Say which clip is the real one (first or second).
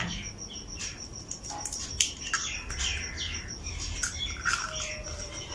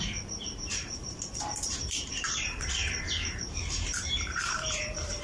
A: first